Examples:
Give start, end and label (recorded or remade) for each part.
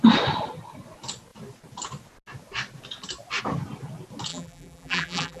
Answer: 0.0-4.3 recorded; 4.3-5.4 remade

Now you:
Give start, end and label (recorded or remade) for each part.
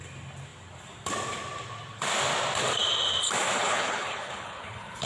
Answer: 0.0-3.6 recorded; 3.6-5.1 remade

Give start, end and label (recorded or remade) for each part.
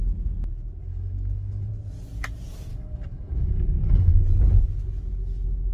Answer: 0.0-0.8 recorded; 0.8-1.7 remade; 1.7-2.7 recorded; 2.7-4.2 remade; 4.2-5.7 recorded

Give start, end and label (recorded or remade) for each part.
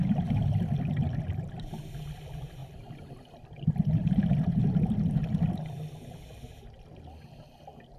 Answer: 0.0-8.0 recorded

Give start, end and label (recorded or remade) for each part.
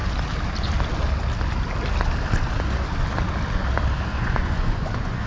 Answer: 0.0-4.1 recorded; 4.1-5.3 remade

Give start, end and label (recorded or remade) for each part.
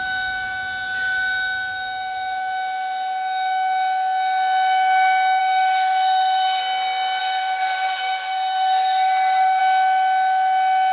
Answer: 0.0-5.4 recorded; 5.4-6.6 remade; 6.6-7.2 recorded; 7.2-9.6 remade; 9.6-10.9 recorded